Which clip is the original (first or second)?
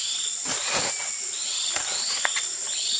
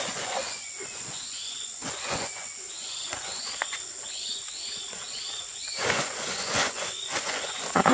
first